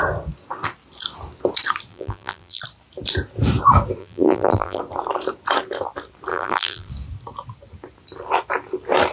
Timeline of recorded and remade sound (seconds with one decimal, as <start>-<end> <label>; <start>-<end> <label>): 0.0-1.9 recorded; 1.9-2.6 remade; 2.6-4.0 recorded; 4.0-4.8 remade; 4.8-6.3 recorded; 6.3-6.9 remade; 6.9-9.1 recorded